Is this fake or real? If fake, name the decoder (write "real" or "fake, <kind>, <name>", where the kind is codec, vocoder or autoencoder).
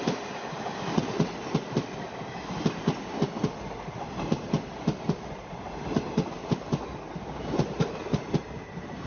real